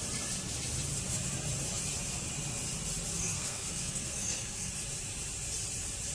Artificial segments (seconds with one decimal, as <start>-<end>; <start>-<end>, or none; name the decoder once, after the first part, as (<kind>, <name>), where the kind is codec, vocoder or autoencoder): 3.2-4.7 (codec, SNAC)